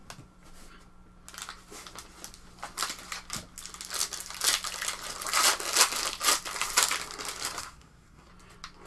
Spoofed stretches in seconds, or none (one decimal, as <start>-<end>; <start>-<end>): 7.6-8.3